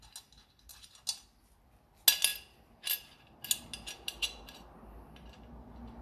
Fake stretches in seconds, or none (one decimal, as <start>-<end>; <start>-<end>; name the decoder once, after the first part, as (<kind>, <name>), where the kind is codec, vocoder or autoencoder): none